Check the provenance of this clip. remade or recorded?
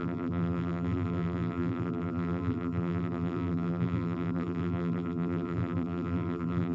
remade